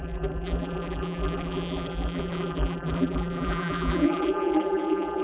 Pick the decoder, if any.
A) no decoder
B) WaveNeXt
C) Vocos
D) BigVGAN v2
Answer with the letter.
D